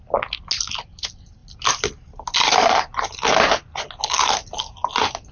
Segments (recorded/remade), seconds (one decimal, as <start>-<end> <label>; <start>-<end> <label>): 0.0-5.3 recorded